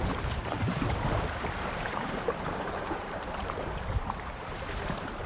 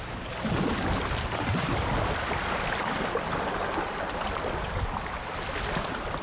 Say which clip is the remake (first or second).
first